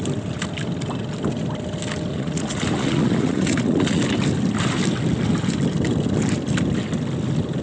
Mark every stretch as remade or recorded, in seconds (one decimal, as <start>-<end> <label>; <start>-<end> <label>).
0.0-2.1 recorded; 2.1-4.0 remade; 4.0-7.6 recorded